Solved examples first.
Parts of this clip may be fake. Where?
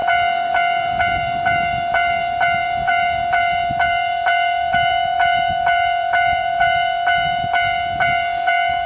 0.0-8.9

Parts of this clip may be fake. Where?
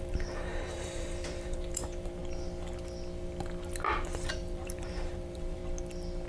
0.0-2.2; 4.3-5.6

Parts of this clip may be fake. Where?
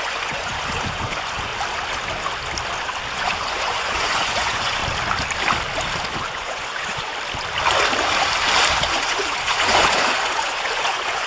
0.0-1.5; 3.1-4.8; 6.1-7.1; 8.9-11.3